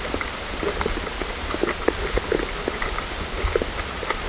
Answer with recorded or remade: recorded